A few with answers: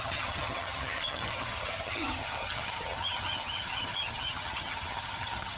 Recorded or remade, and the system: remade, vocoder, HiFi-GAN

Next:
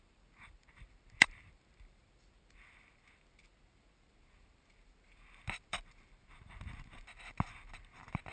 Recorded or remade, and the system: recorded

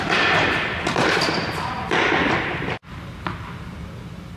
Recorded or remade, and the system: recorded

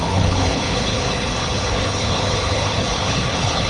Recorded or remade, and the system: remade, codec, HILCodec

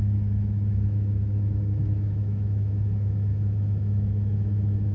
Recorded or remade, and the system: remade, autoencoder, DAC-VAE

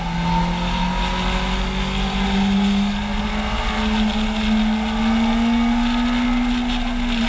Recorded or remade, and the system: recorded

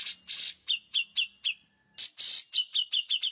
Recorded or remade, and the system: recorded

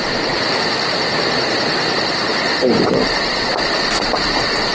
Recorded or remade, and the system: recorded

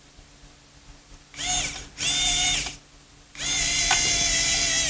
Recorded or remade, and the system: recorded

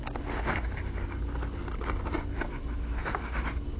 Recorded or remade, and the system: recorded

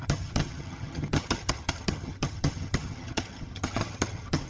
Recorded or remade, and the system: remade, vocoder, HiFi-GAN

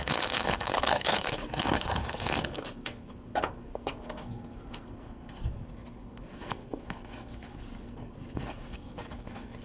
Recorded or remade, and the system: remade, codec, SNAC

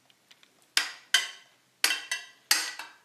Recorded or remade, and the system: recorded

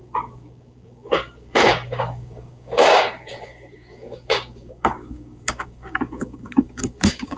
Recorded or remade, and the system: remade, codec, DAC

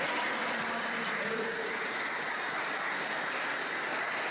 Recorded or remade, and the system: recorded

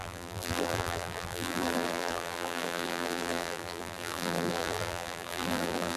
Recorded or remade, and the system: remade, vocoder, BigVGAN v2